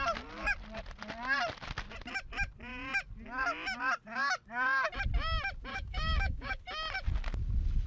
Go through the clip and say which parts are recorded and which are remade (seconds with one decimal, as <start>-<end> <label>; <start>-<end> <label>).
0.0-5.7 recorded; 5.7-6.6 remade; 6.6-7.9 recorded